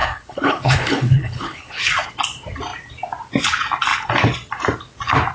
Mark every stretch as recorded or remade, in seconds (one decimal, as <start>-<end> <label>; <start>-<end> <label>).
0.0-1.9 remade; 1.9-5.3 recorded